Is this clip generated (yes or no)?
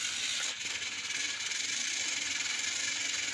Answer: no